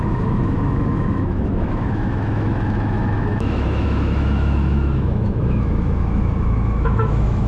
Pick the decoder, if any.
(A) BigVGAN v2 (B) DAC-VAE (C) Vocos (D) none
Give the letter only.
B